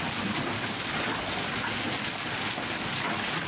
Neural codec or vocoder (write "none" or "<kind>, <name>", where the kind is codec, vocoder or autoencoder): none